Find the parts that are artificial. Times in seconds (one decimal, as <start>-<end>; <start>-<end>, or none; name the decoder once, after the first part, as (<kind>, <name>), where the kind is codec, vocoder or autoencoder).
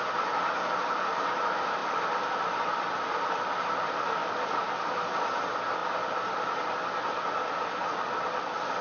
none